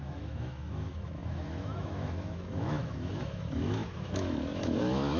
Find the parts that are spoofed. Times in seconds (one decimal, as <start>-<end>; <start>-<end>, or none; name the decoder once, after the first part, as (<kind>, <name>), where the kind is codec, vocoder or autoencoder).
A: 0.0-5.2 (autoencoder, DAC-VAE)